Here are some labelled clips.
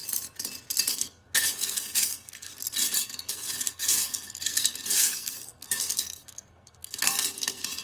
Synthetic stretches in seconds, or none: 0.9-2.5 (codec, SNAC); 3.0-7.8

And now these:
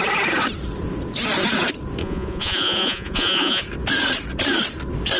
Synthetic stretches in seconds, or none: 2.0-3.6 (vocoder, Vocos)

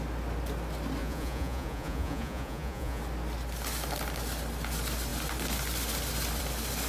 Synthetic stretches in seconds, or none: 1.0-3.0 (vocoder, Vocos)

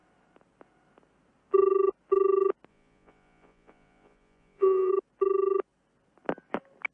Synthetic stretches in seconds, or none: 2.7-4.9 (vocoder, Vocos)

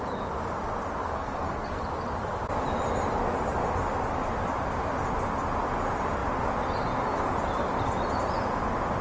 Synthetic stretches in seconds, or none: 1.0-1.8 (codec, SNAC)

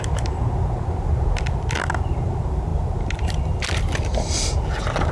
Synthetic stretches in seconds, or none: none

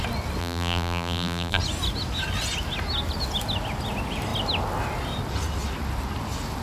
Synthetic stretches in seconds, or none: 0.4-1.6 (vocoder, BigVGAN v2)

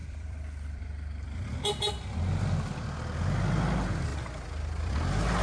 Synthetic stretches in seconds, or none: 0.0-1.6 (vocoder, BigVGAN v2); 4.1-4.8